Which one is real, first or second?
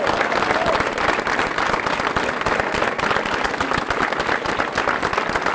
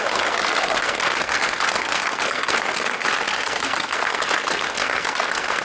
first